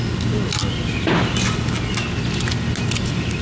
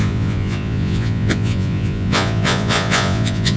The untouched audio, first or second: first